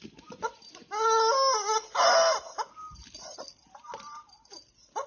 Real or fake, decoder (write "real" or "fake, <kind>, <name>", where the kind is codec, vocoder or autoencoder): real